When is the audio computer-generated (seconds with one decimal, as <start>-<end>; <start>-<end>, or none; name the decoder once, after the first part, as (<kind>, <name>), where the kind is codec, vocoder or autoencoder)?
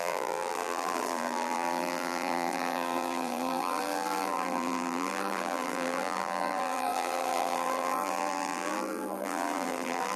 0.0-10.2 (vocoder, BigVGAN v2)